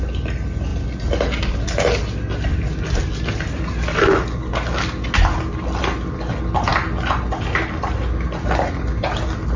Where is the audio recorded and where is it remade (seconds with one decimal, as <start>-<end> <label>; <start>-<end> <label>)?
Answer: 0.0-9.6 recorded